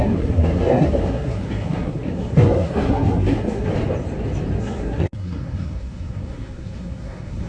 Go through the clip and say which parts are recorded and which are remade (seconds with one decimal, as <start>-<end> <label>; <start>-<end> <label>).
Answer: 0.0-3.7 remade; 3.7-4.6 recorded; 4.6-7.5 remade